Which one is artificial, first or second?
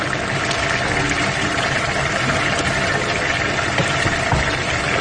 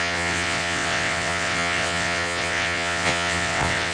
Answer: second